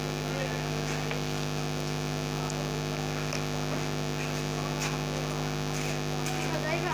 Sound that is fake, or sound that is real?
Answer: real